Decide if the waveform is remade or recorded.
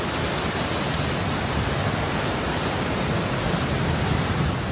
recorded